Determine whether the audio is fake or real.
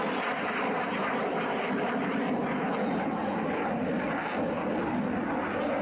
real